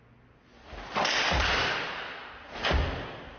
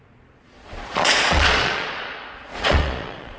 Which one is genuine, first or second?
first